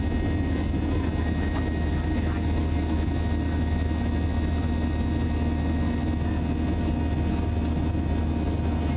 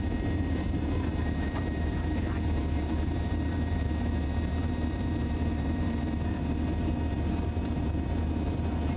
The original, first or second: first